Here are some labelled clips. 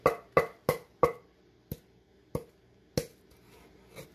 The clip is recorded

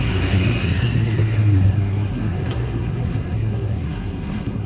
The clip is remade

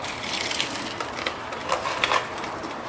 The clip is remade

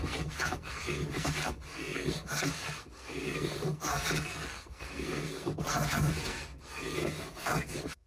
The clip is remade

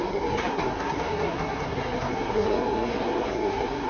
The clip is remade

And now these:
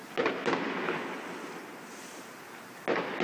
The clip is recorded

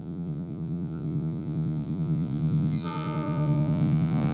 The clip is remade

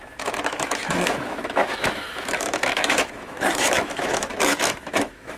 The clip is remade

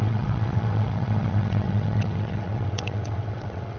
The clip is remade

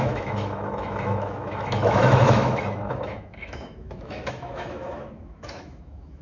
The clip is remade